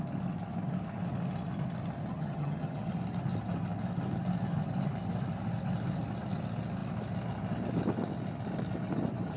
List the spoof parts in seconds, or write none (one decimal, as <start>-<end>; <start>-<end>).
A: 2.1-2.9

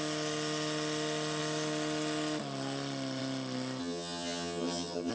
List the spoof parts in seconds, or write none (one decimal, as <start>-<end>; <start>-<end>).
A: 3.8-5.1

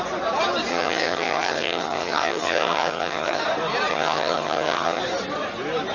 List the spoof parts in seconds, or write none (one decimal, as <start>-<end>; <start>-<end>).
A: 0.7-3.4; 3.9-5.0

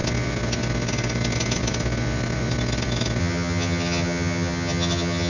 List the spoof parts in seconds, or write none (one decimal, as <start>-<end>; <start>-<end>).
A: 3.2-5.3

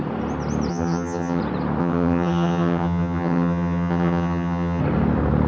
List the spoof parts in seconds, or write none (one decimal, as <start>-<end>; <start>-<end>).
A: 0.7-1.4; 1.8-4.8

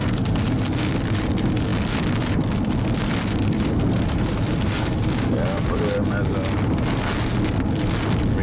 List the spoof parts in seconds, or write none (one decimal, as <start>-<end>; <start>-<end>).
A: none